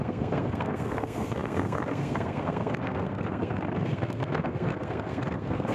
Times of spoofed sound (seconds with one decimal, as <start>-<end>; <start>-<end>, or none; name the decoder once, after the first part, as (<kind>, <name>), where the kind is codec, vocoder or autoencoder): 0.0-5.7 (codec, SNAC)

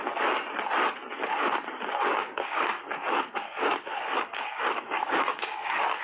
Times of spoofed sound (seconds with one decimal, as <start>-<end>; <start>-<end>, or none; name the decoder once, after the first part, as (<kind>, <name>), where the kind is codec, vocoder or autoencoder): 2.2-6.0 (codec, DAC)

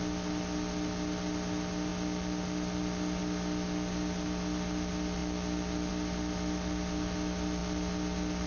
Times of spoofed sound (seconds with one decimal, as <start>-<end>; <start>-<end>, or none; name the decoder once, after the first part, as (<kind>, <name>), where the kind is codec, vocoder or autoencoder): none

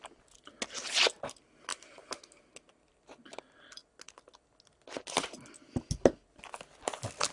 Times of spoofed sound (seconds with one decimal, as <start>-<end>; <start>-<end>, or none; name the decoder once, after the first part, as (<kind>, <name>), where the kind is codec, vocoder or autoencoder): none

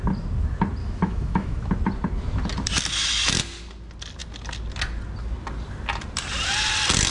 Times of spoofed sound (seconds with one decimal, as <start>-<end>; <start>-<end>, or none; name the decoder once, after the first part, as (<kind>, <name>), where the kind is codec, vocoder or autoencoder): 0.8-1.6 (autoencoder, DAC-VAE)